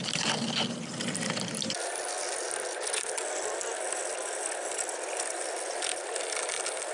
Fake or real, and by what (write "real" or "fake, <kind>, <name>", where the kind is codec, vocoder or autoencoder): real